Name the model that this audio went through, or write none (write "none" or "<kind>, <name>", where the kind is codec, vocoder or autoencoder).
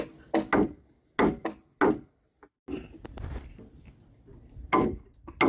none